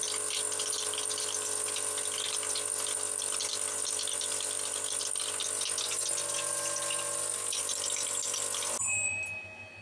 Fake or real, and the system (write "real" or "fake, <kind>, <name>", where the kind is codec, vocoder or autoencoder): real